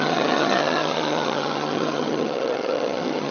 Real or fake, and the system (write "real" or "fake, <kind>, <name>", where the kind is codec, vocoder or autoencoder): fake, vocoder, HiFi-GAN